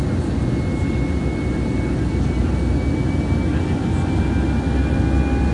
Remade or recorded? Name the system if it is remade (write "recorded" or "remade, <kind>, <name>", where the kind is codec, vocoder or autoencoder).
recorded